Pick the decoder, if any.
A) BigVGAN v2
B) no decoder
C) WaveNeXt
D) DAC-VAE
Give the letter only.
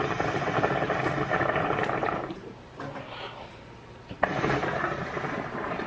A